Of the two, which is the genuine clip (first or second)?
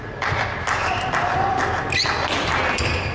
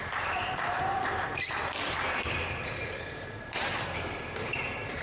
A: first